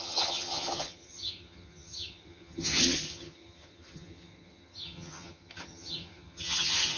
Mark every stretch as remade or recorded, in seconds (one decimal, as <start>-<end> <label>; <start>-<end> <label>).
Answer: 0.0-7.0 remade